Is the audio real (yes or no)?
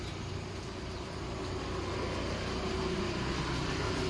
no